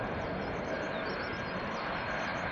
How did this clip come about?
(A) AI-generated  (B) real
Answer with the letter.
B